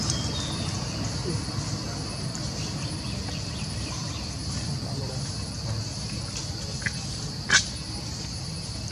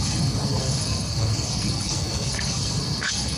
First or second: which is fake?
second